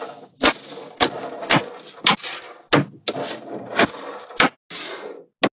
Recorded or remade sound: recorded